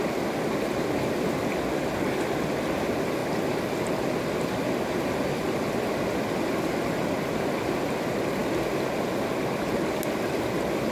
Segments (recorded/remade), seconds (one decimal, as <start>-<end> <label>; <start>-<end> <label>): 0.0-10.9 recorded